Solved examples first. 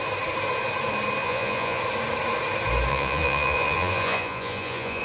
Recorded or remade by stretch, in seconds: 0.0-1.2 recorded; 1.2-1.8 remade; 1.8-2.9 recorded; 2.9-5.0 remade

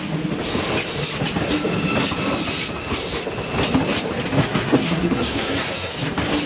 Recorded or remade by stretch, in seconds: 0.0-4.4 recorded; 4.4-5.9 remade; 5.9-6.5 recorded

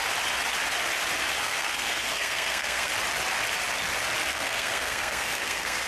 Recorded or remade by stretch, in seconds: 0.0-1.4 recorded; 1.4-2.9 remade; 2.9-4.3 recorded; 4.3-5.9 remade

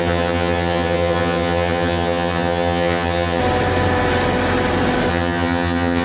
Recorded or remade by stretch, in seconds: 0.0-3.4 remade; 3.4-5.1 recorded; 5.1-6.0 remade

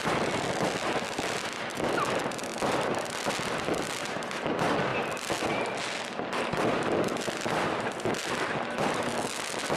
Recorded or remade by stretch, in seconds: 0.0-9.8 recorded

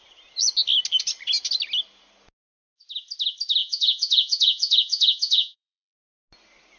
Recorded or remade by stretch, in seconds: 0.0-3.6 recorded; 3.6-6.0 remade; 6.0-6.8 recorded